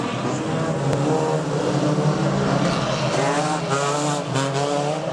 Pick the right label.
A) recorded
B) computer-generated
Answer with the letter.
A